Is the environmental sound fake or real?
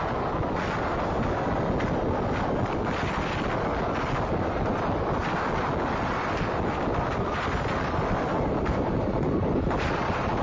real